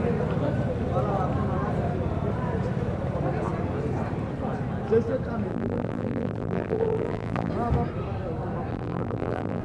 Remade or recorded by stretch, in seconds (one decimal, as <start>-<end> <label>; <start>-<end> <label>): 0.0-5.5 recorded; 5.5-7.5 remade; 7.5-8.7 recorded; 8.7-9.6 remade